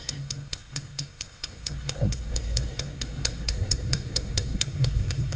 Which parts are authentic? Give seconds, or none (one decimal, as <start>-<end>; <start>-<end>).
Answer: none